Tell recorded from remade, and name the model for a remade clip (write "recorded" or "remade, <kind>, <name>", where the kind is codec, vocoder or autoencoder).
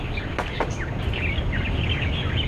recorded